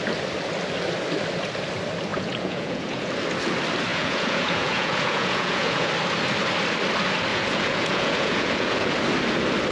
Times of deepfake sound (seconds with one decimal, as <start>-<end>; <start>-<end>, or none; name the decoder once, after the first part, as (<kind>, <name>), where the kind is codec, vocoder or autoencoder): 2.1-3.1 (vocoder, Vocos); 3.9-5.9; 7.3-8.9